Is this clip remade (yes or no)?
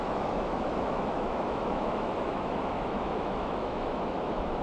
yes